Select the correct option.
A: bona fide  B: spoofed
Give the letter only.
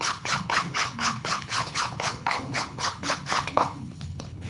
B